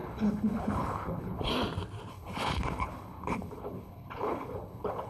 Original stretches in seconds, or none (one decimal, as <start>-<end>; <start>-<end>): 1.5-2.1

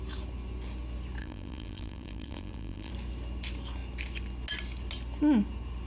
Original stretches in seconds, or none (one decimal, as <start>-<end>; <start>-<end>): 0.0-1.2; 2.9-5.9

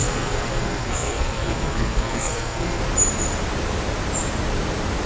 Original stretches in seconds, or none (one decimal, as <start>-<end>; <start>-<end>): 2.8-5.1